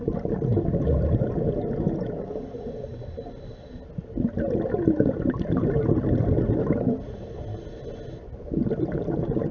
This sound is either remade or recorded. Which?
recorded